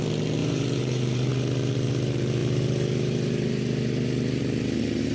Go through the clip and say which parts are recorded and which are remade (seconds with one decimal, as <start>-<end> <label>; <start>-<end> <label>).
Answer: 0.0-0.4 recorded; 0.4-1.3 remade; 1.3-5.1 recorded